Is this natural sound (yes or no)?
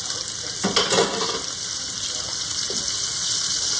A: yes